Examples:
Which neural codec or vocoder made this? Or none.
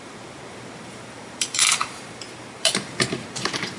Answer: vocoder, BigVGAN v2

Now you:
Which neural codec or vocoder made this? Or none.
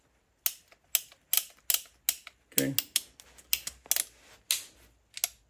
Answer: none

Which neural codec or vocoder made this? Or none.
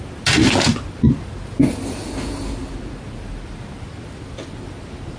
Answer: none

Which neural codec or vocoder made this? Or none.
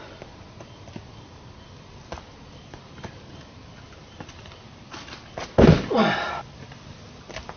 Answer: vocoder, BigVGAN v2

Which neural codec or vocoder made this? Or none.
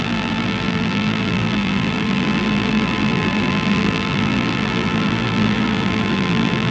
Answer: vocoder, BigVGAN v2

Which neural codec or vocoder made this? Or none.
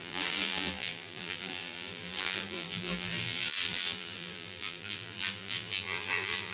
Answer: vocoder, BigVGAN v2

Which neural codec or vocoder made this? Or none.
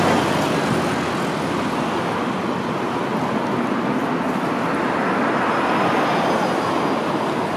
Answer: none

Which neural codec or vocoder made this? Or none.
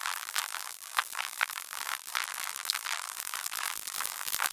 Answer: vocoder, BigVGAN v2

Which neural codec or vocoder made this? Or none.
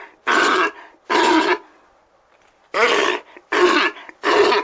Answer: none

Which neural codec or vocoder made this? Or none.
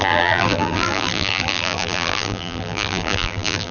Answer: vocoder, BigVGAN v2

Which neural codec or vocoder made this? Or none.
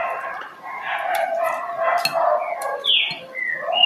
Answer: none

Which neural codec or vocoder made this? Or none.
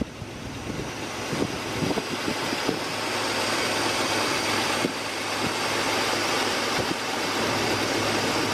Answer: none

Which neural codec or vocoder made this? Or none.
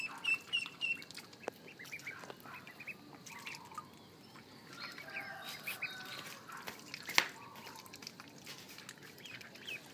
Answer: none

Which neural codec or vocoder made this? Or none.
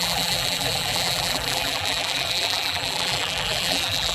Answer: vocoder, BigVGAN v2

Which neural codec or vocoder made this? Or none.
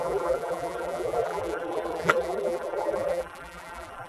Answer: vocoder, BigVGAN v2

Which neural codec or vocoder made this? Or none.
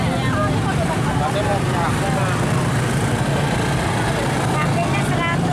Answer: none